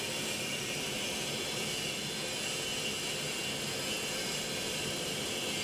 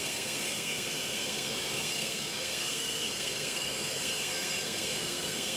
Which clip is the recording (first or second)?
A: first